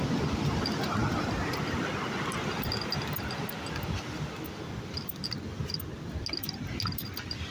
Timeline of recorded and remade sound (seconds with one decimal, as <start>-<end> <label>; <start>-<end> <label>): 0.0-7.5 recorded